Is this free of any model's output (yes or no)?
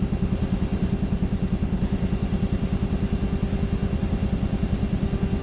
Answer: yes